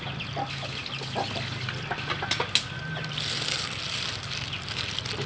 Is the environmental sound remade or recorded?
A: recorded